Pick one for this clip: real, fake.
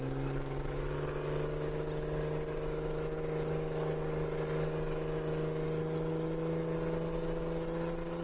real